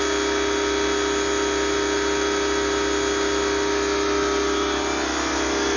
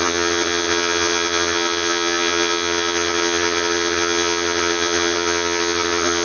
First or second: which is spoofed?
second